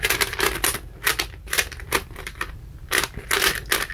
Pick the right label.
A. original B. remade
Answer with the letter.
B